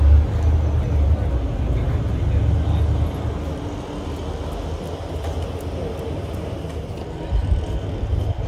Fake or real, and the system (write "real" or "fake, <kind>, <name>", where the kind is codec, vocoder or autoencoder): real